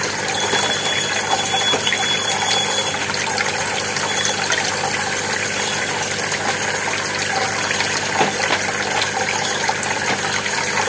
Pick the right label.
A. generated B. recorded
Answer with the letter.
B